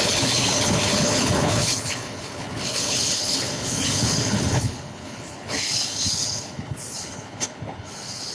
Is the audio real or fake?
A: fake